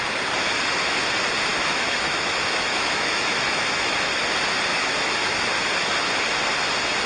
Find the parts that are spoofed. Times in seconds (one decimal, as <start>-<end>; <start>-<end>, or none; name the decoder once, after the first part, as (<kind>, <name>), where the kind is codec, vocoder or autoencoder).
1.5-4.2 (autoencoder, DAC-VAE); 4.7-5.5